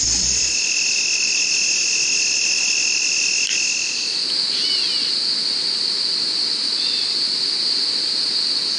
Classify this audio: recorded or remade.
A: recorded